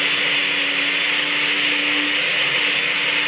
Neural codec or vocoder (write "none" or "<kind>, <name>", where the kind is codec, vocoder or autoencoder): none